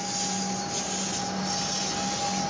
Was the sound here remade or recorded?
recorded